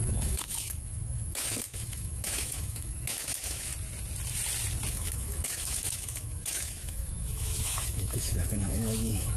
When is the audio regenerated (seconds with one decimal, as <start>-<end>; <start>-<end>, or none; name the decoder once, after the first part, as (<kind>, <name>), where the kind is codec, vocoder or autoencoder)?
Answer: 0.0-3.7 (autoencoder, DAC-VAE); 4.9-9.4